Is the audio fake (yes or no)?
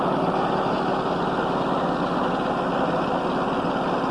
no